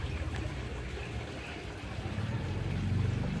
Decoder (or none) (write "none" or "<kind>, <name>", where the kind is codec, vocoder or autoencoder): none